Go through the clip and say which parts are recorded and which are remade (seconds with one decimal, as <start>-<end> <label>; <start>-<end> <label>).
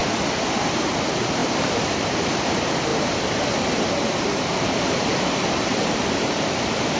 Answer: 0.0-0.9 recorded; 0.9-2.9 remade; 2.9-4.2 recorded; 4.2-7.0 remade